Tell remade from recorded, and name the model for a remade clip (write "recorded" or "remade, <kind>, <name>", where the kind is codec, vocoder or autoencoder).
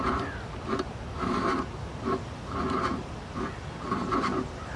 recorded